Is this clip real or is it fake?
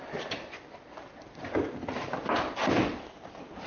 real